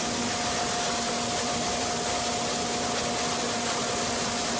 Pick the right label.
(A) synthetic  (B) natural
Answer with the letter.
B